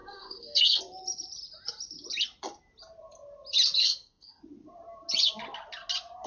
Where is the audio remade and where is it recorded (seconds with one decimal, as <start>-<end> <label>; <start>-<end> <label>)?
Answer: 0.0-0.8 remade; 0.8-3.8 recorded; 3.8-4.4 remade; 4.4-6.3 recorded